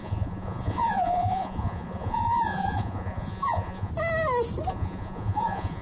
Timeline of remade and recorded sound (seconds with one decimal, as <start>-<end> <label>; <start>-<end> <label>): 0.0-3.9 remade; 3.9-4.7 recorded; 4.7-5.8 remade